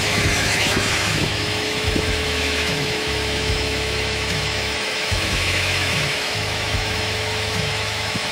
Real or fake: fake